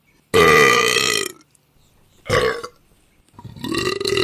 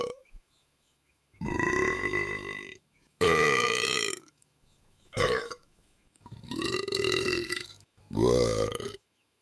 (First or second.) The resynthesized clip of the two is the second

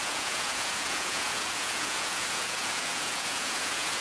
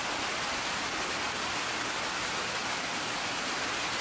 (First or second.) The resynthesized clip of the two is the first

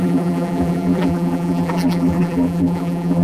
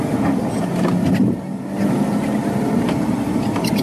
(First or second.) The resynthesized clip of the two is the first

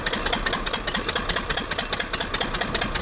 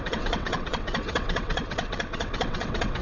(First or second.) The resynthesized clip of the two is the second